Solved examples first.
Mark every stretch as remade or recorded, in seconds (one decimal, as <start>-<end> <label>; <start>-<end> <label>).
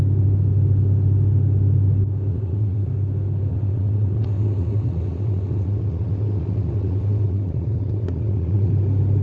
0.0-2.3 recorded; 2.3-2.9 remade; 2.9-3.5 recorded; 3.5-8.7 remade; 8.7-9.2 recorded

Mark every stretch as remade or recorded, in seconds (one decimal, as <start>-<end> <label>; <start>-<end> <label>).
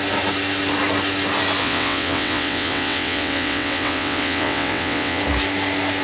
0.0-1.6 recorded; 1.6-5.2 remade; 5.2-6.0 recorded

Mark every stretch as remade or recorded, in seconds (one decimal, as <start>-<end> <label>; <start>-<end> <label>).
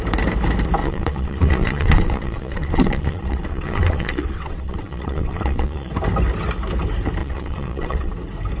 0.0-0.8 recorded; 0.8-5.9 remade; 5.9-7.2 recorded; 7.2-8.1 remade; 8.1-8.6 recorded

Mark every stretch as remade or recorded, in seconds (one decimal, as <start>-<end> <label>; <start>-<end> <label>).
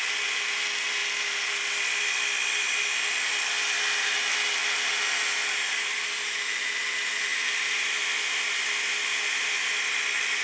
0.0-10.4 recorded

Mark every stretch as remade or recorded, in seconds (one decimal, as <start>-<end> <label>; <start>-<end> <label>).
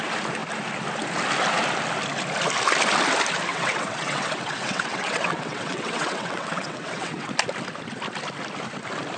0.0-3.5 recorded; 3.5-7.3 remade; 7.3-9.2 recorded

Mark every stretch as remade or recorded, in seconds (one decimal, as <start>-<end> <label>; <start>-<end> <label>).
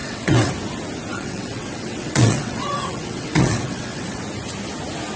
0.0-0.5 remade; 0.5-1.1 recorded; 1.1-4.2 remade; 4.2-5.2 recorded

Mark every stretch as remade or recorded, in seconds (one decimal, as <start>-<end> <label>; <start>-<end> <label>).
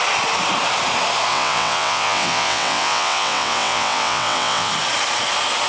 0.0-1.3 recorded; 1.3-4.7 remade; 4.7-5.7 recorded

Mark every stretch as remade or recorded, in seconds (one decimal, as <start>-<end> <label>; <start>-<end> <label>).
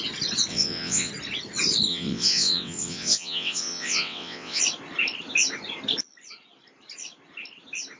0.0-0.5 recorded; 0.5-1.1 remade; 1.1-1.9 recorded; 1.9-4.6 remade; 4.6-8.0 recorded